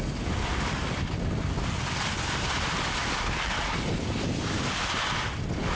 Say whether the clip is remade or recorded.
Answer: recorded